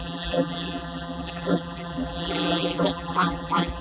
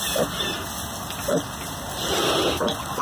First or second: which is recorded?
second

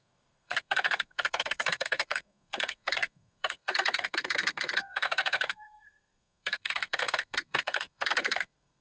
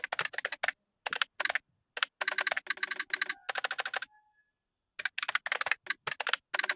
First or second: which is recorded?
second